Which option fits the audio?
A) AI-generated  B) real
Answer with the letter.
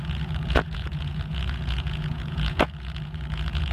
A